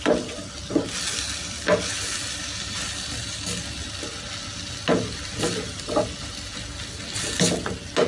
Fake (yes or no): no